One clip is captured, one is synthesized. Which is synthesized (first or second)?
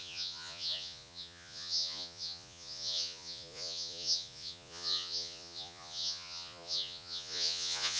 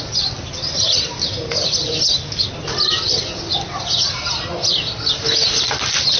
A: first